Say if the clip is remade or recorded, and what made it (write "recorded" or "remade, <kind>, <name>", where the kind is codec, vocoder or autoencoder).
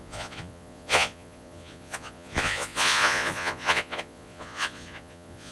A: remade, vocoder, Vocos